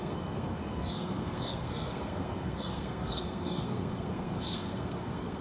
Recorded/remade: remade